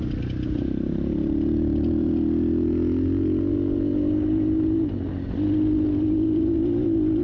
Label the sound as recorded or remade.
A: recorded